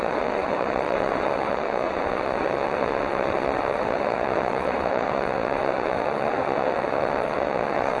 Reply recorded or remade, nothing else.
remade